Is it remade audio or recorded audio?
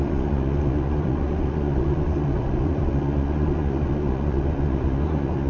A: remade